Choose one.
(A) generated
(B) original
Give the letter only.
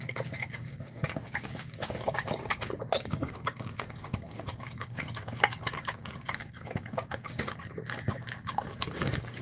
A